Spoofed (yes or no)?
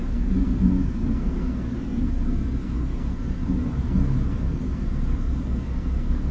yes